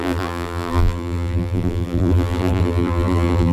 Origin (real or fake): fake